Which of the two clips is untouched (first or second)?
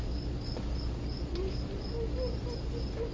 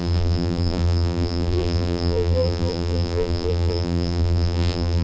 first